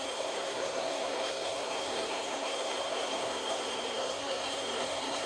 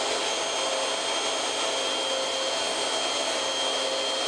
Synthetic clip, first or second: first